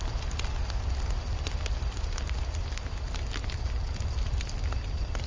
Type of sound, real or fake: real